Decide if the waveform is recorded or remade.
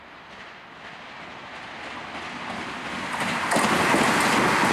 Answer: recorded